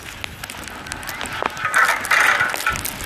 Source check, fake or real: real